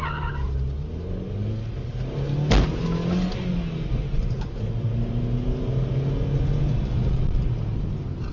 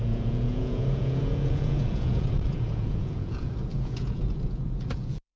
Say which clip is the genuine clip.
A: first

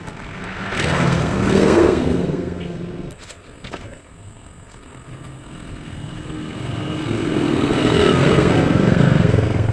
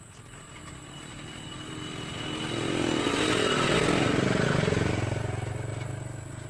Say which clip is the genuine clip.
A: second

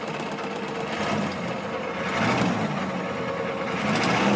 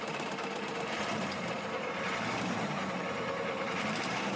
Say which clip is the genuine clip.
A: first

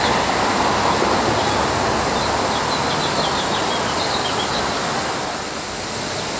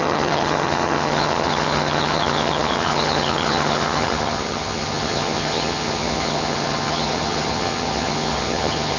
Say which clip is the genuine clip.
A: first